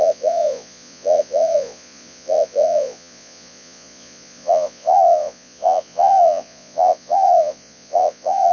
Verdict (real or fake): fake